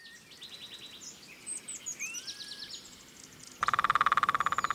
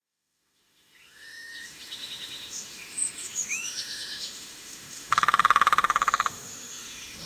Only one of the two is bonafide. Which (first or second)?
first